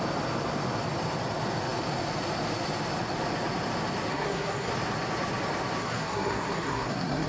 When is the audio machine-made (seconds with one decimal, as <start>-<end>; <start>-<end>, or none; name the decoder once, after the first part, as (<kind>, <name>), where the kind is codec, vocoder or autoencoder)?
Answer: 4.1-4.7 (codec, SNAC); 5.8-7.3

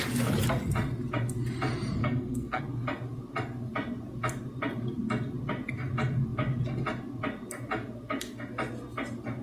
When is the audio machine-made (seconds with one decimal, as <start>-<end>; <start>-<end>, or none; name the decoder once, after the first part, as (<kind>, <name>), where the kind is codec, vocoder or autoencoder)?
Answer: 2.0-2.6 (codec, SNAC)

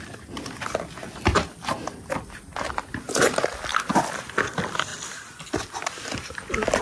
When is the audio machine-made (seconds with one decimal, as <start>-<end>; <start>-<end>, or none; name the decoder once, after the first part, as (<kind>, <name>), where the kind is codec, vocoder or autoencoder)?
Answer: none

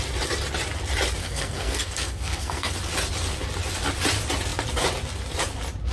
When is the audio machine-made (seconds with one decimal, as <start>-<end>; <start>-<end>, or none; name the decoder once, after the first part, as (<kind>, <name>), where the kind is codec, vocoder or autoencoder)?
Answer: 1.2-2.7 (codec, SNAC)